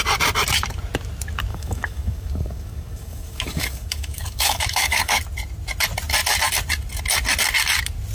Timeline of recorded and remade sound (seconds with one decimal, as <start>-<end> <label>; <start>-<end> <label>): 0.0-1.5 recorded; 1.5-5.2 remade; 5.2-8.1 recorded